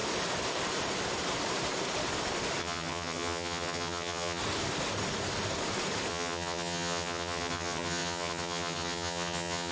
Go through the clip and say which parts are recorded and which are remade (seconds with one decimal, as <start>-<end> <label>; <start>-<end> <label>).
0.0-2.6 recorded; 2.6-4.4 remade; 4.4-6.1 recorded; 6.1-9.7 remade